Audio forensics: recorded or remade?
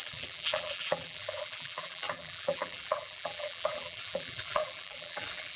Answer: remade